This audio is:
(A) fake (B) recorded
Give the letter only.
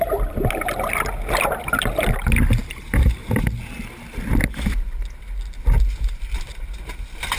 B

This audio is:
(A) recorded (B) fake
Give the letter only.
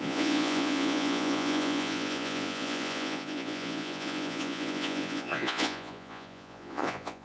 B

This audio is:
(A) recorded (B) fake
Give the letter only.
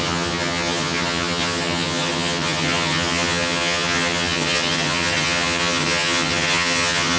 B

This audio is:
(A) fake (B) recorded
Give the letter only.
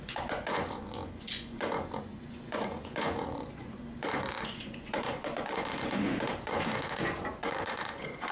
A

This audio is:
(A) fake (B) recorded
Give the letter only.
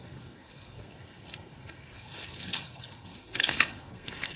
A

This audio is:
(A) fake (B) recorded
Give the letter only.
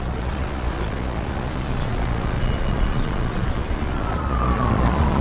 A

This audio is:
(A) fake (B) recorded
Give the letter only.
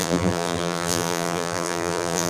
A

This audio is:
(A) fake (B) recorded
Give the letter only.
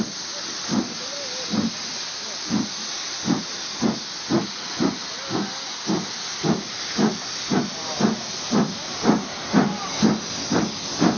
B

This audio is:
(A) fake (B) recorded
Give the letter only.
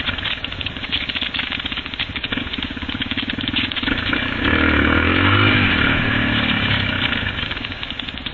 A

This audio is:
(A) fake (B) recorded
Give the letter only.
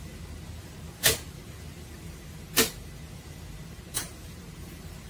B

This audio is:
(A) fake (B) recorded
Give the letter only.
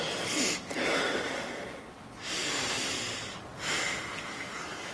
B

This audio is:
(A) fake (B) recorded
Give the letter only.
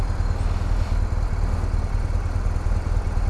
B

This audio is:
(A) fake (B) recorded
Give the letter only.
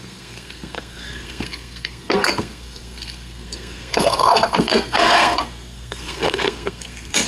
A